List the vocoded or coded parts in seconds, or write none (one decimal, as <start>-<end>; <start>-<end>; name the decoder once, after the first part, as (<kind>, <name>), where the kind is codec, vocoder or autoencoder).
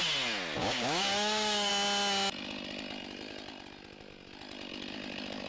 0.6-1.7 (codec, DAC)